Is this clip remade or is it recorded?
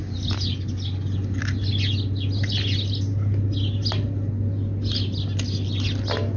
recorded